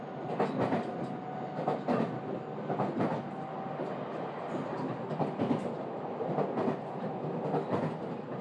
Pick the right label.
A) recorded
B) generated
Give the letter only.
A